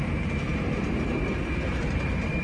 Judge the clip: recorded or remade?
remade